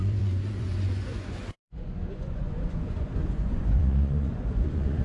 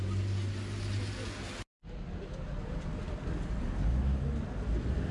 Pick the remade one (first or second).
first